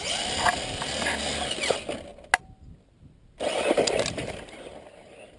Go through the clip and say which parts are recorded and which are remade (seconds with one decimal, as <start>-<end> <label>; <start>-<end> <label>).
0.0-5.4 recorded